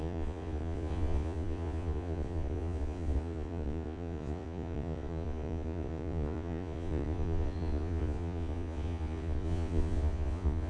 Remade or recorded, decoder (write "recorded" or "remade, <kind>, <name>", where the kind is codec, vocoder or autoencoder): remade, vocoder, Vocos